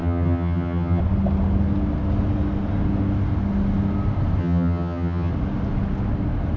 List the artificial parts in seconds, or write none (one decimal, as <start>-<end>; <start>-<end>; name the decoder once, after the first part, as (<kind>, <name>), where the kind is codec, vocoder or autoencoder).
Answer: 0.0-1.0 (vocoder, HiFi-GAN); 4.4-5.3